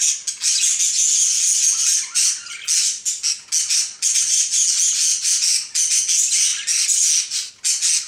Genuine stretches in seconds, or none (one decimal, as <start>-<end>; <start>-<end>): 0.0-8.1

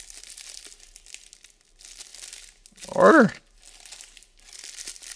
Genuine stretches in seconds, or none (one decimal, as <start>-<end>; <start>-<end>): 0.0-5.2

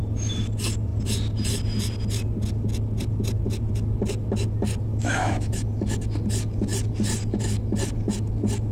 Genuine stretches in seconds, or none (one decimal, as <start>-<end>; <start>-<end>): 0.0-4.9; 5.5-8.7

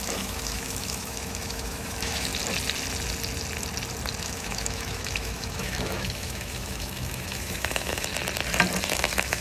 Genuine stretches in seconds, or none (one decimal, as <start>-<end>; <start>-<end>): 2.3-4.2; 8.1-9.0